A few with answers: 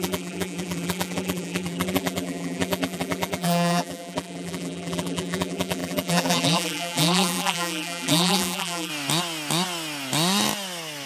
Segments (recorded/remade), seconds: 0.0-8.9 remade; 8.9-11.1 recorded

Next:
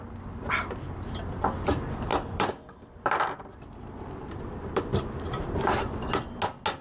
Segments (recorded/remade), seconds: 0.0-2.1 recorded; 2.1-4.8 remade; 4.8-6.8 recorded

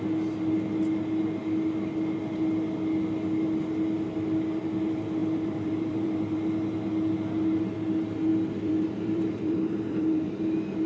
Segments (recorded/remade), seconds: 0.0-5.2 recorded; 5.2-6.4 remade; 6.4-8.3 recorded; 8.3-10.3 remade; 10.3-10.9 recorded

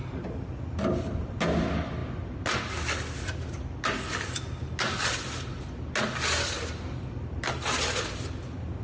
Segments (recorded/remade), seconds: 0.0-8.8 recorded

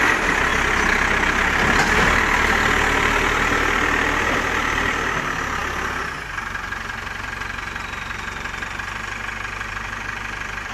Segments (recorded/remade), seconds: 0.0-0.5 remade; 0.5-3.0 recorded; 3.0-5.6 remade; 5.6-9.7 recorded; 9.7-10.7 remade

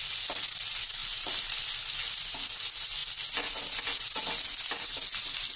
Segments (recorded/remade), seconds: 0.0-1.0 recorded; 1.0-1.7 remade; 1.7-5.6 recorded